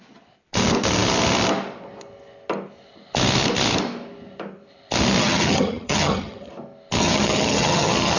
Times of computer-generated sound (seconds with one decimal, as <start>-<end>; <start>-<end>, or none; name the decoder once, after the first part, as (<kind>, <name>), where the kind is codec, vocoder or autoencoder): 5.2-6.5 (vocoder, HiFi-GAN); 7.0-8.2